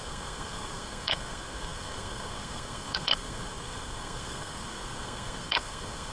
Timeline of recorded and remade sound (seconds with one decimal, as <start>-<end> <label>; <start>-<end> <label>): 0.0-6.1 remade